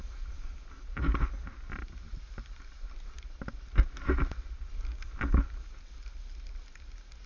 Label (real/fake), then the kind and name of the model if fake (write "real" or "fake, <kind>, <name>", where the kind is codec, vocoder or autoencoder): real